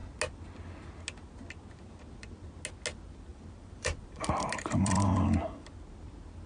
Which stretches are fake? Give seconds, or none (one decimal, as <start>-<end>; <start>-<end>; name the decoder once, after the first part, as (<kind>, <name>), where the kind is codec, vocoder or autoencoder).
3.3-5.7 (vocoder, BigVGAN v2)